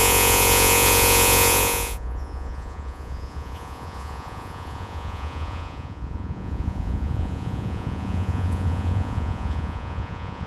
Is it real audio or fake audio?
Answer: fake